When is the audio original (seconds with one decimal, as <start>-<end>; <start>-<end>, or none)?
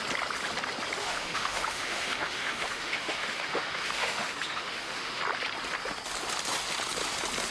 0.0-1.0; 5.2-7.5